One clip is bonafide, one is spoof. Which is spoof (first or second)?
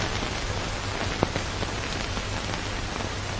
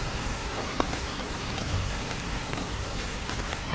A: second